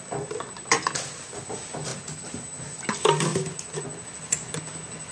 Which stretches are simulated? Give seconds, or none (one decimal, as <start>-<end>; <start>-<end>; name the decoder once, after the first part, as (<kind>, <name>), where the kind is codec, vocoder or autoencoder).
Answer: 1.9-2.8 (vocoder, BigVGAN v2)